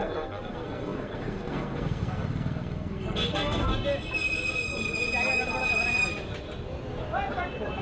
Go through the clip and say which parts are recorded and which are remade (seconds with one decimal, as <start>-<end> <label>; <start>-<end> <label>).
0.0-3.7 remade; 3.7-7.8 recorded